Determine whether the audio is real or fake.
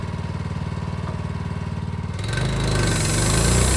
real